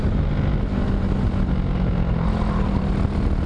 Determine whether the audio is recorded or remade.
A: recorded